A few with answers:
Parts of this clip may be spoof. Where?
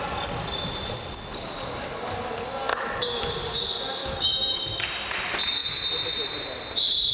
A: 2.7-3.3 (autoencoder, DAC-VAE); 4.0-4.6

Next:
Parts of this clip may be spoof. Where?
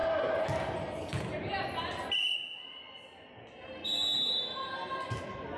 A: none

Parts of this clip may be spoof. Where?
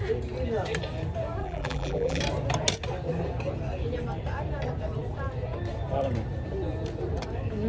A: 1.4-2.2 (vocoder, BigVGAN v2)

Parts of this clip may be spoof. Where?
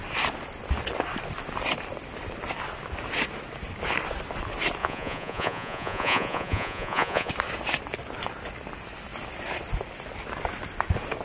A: 4.8-7.3 (vocoder, Vocos)